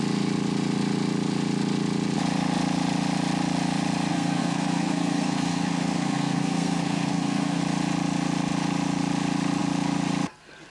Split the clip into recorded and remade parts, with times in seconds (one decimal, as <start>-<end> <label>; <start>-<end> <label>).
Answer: 0.0-4.1 recorded; 4.1-7.6 remade; 7.6-10.7 recorded